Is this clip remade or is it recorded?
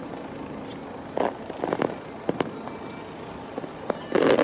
recorded